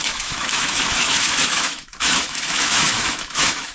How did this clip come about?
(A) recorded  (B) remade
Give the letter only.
B